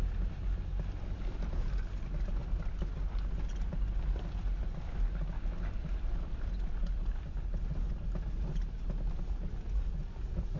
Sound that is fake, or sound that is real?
real